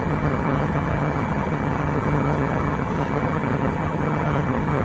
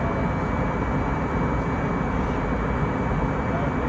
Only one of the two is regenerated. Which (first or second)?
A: first